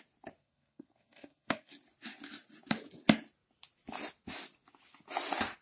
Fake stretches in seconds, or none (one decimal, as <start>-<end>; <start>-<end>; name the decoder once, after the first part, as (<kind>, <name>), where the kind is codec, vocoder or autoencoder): 0.4-1.7 (codec, SNAC)